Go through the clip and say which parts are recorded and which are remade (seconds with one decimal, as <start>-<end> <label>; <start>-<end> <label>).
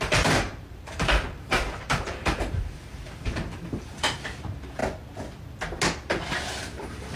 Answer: 0.0-4.8 remade; 4.8-6.3 recorded; 6.3-7.2 remade